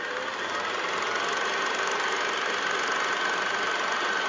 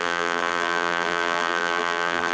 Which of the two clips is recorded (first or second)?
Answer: first